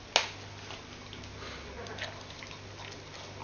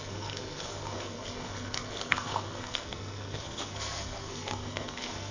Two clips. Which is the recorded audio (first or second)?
first